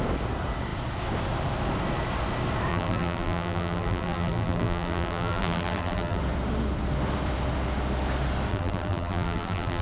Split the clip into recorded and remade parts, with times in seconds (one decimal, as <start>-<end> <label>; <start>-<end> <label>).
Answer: 0.0-2.7 recorded; 2.7-6.2 remade; 6.2-8.5 recorded; 8.5-9.8 remade